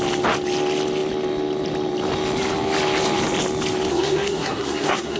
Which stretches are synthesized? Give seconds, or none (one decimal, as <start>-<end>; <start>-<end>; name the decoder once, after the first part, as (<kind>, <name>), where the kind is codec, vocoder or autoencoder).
3.9-5.2 (codec, SNAC)